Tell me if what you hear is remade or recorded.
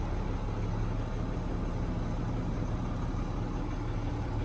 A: recorded